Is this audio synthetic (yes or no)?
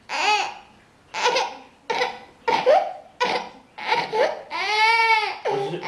no